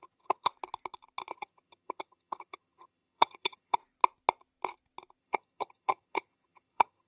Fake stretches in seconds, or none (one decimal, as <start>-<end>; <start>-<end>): 0.0-0.5; 1.3-3.8; 5.2-7.1